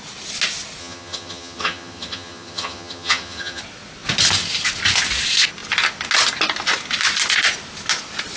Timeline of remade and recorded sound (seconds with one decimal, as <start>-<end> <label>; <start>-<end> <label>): 0.0-0.8 recorded; 0.8-3.6 remade; 3.6-8.4 recorded